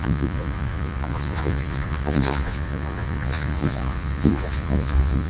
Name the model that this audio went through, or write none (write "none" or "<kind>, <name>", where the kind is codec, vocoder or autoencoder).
vocoder, Vocos